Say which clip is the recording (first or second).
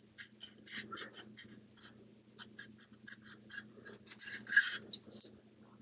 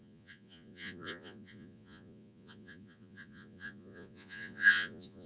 first